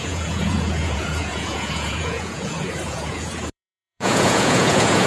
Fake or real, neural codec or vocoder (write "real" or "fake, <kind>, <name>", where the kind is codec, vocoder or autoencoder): fake, vocoder, Vocos